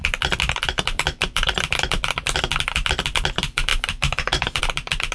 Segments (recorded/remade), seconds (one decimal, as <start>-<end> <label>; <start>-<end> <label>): 0.0-5.1 remade